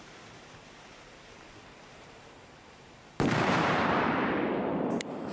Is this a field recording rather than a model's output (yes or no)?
no